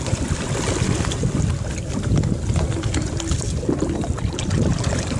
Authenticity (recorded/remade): recorded